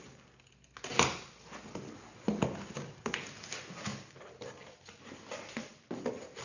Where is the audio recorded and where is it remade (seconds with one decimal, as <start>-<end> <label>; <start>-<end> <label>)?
0.0-6.4 recorded